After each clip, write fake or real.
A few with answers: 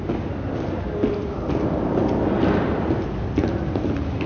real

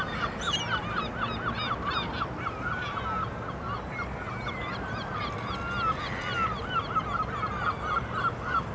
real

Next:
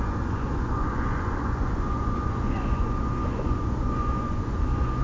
fake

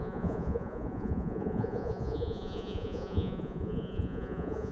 fake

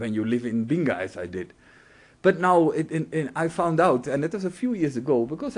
real